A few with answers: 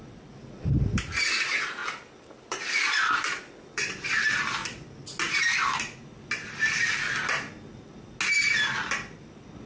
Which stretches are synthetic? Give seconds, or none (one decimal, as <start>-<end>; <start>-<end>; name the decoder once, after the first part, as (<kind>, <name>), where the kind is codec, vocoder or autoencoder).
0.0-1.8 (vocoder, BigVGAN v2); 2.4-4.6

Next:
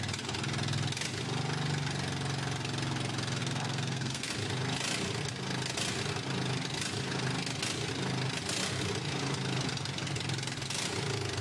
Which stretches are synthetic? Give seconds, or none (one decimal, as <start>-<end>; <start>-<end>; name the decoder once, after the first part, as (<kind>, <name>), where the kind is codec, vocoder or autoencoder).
3.4-4.3 (codec, SNAC)

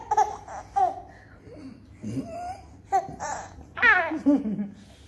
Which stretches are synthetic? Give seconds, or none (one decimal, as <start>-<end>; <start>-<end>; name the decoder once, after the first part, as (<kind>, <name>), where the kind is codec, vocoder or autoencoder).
3.1-4.0 (vocoder, Vocos)

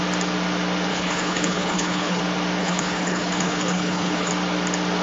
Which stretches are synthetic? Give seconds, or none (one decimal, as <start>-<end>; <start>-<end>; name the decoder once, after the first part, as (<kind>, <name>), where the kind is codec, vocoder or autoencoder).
0.9-2.2 (codec, HILCodec); 2.6-4.3